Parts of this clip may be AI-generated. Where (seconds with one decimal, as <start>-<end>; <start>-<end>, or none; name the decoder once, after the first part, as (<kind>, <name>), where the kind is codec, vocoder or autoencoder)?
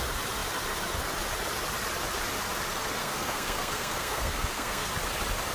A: 3.0-4.9 (codec, SNAC)